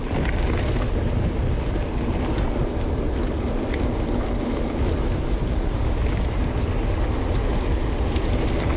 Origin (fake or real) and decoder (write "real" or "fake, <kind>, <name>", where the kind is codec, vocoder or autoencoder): real